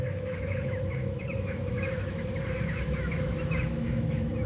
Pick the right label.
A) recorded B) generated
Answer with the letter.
B